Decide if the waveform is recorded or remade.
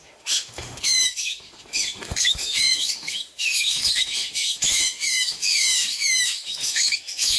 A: remade